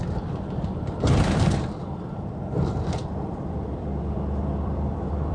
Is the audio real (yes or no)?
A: no